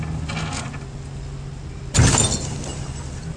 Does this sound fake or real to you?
real